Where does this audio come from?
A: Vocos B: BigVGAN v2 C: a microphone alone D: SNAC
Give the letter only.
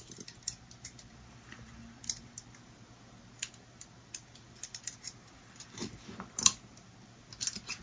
C